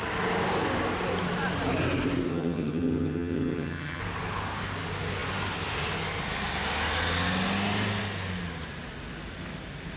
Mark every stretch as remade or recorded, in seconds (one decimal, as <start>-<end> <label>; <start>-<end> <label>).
0.0-2.3 recorded; 2.3-4.0 remade; 4.0-10.0 recorded